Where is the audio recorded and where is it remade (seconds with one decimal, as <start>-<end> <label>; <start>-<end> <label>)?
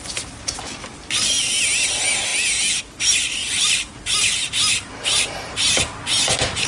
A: 0.0-3.4 recorded; 3.4-5.7 remade; 5.7-6.7 recorded